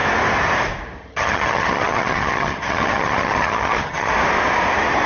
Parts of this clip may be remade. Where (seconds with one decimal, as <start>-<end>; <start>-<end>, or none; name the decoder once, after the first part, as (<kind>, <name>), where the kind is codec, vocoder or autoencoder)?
1.0-4.1 (vocoder, HiFi-GAN)